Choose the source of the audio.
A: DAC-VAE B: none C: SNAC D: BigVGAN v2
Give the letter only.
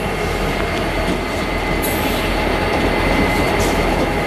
B